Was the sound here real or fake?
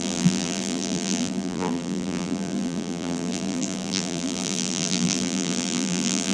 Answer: fake